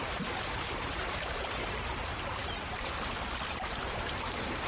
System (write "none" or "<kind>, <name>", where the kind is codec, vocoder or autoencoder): vocoder, BigVGAN v2